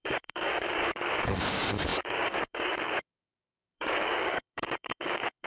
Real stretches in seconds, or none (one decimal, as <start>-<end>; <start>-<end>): none